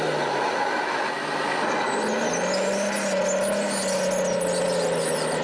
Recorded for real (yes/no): yes